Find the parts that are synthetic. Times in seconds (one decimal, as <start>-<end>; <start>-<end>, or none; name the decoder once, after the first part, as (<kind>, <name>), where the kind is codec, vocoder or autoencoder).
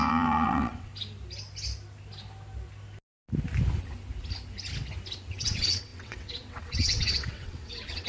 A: 0.0-0.9 (vocoder, WaveNeXt); 5.3-8.1